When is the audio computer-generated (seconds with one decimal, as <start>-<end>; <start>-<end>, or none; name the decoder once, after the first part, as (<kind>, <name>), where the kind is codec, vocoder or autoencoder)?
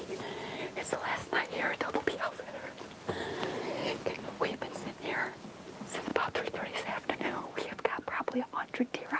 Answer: 1.2-2.3 (autoencoder, DAC-VAE)